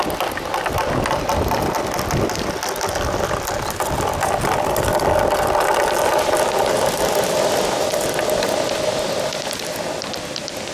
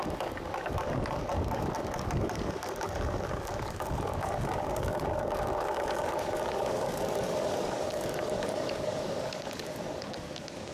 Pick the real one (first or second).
first